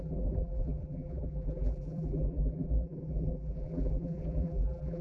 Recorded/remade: remade